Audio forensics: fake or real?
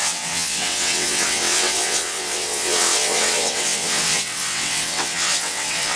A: fake